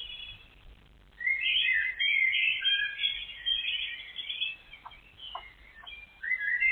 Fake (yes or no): no